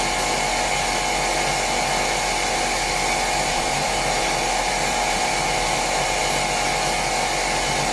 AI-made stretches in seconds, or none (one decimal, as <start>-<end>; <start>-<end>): 3.5-6.2